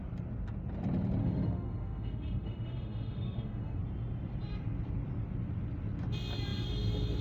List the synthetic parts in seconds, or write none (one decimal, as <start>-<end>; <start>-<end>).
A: 1.2-3.8